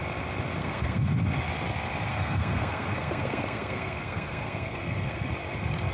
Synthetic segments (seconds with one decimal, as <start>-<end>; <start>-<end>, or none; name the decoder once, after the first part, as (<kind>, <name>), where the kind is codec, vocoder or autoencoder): 0.6-1.1 (codec, SNAC); 2.1-5.3